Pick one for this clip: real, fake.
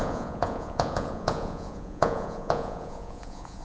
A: fake